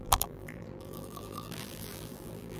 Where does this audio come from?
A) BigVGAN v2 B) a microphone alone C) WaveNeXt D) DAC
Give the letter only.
A